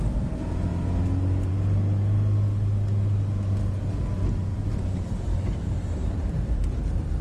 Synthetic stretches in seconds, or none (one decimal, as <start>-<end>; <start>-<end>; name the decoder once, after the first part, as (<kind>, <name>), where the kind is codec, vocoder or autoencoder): 4.5-6.8 (vocoder, BigVGAN v2)